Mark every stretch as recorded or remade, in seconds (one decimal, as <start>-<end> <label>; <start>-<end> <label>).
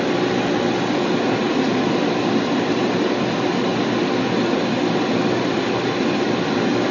0.0-6.9 recorded